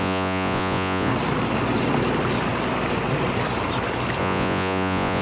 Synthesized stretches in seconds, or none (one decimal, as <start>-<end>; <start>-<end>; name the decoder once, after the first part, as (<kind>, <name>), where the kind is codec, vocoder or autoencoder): 0.0-1.1 (vocoder, Vocos); 4.2-5.2